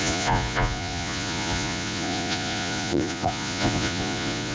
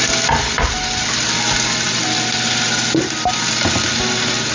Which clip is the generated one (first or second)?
first